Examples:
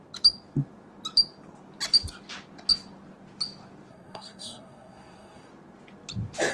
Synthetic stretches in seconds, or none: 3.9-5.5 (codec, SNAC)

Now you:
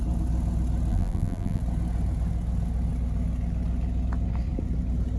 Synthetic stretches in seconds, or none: 0.9-1.6 (vocoder, BigVGAN v2)

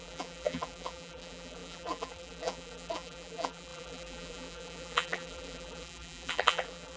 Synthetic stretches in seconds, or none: 0.0-7.0 (vocoder, BigVGAN v2)

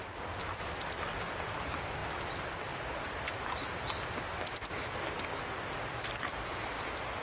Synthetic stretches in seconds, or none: none

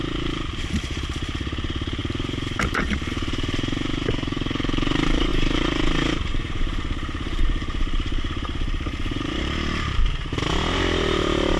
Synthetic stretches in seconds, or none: 0.0-11.6 (vocoder, BigVGAN v2)

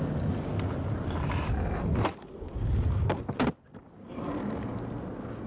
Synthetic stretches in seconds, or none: none